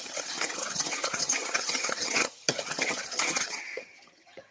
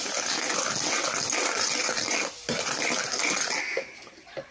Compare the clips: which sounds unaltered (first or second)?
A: second